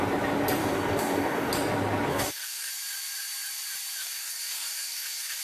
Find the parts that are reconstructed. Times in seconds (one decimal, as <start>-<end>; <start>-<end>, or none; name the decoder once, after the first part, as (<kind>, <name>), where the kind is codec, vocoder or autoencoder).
0.6-1.5 (codec, DAC); 2.1-2.7; 4.0-5.4